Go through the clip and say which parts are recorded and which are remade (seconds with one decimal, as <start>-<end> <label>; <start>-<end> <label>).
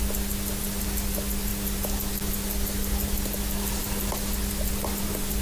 0.0-5.4 recorded